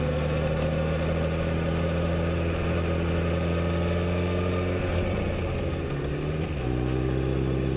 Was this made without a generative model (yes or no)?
yes